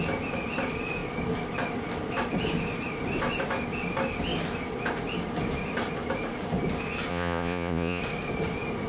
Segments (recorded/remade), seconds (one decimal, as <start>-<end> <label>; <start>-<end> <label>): 0.0-7.1 recorded; 7.1-8.0 remade; 8.0-8.9 recorded